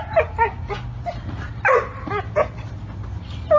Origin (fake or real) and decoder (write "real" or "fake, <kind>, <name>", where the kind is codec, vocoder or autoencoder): real